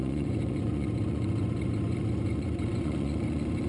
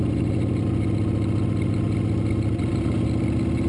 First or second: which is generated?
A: first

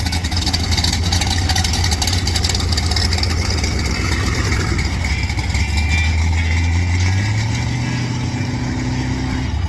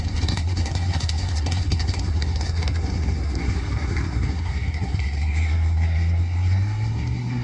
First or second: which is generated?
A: second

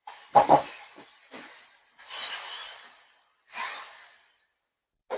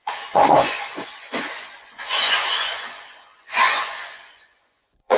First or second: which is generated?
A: second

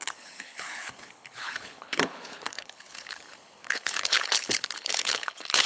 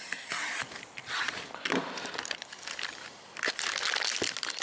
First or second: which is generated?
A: first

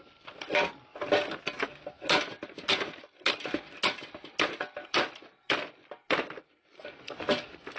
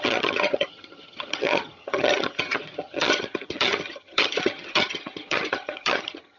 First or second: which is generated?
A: second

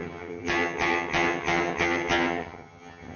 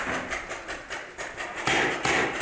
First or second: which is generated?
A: first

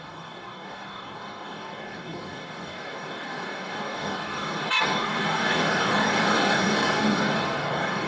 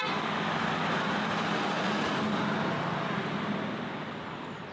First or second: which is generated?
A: first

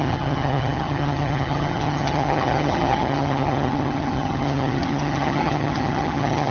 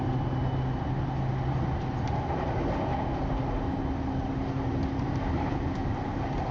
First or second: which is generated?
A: first